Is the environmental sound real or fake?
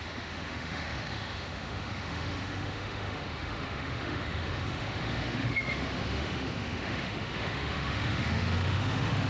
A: fake